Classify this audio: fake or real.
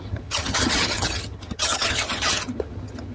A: fake